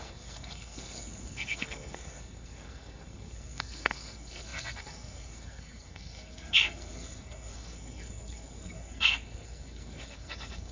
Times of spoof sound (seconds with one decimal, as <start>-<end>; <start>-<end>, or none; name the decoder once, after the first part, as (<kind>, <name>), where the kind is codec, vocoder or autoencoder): 0.0-10.7 (codec, SNAC)